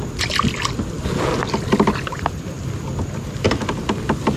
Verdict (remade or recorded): recorded